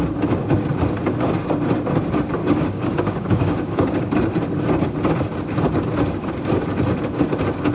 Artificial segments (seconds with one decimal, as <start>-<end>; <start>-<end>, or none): 2.4-4.1